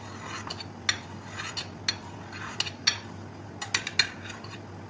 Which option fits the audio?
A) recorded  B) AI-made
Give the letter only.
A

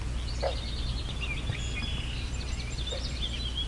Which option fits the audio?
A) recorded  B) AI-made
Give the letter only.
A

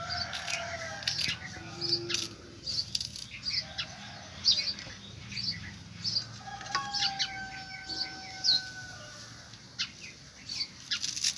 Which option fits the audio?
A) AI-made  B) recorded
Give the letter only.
B